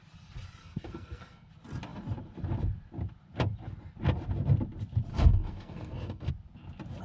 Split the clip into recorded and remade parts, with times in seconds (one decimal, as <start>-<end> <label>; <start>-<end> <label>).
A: 0.0-0.6 recorded; 0.6-1.5 remade; 1.5-5.1 recorded; 5.1-6.3 remade; 6.3-7.0 recorded